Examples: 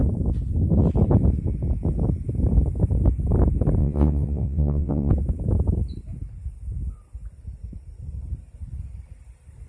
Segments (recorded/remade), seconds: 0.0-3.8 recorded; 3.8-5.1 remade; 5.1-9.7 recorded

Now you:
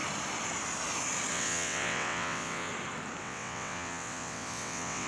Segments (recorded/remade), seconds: 0.0-1.3 recorded; 1.3-2.7 remade; 2.7-3.2 recorded; 3.2-5.1 remade

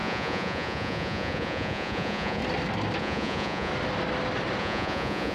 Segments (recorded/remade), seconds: 0.0-2.4 remade; 2.4-3.0 recorded; 3.0-3.7 remade; 3.7-4.6 recorded; 4.6-5.3 remade